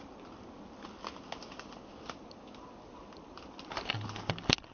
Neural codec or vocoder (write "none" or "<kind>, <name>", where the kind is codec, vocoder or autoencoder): none